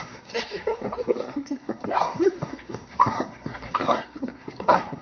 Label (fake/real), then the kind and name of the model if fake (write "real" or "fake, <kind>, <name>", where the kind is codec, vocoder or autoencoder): fake, codec, SNAC